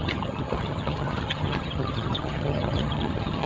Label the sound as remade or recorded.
remade